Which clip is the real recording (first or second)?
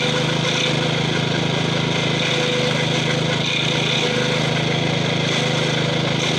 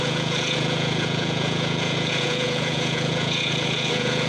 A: first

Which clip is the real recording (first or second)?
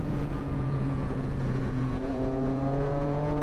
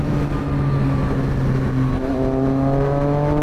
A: second